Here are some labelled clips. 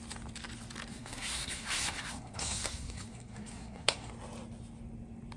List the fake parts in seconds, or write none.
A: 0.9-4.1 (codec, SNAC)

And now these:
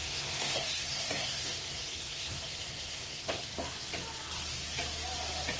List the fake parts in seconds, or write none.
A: 0.0-3.4 (codec, SNAC)

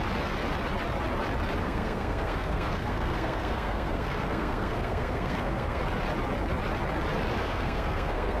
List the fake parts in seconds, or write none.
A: 1.6-5.8 (codec, SNAC); 7.4-8.4

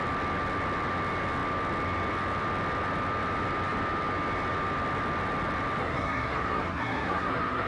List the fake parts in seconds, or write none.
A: 5.8-7.7 (codec, SNAC)

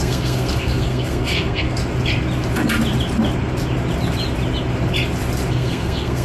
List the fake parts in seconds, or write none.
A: 0.0-1.8 (codec, SNAC); 5.5-6.2

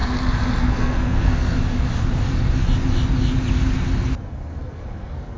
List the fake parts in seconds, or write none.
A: 0.6-1.6 (codec, SNAC); 4.3-5.4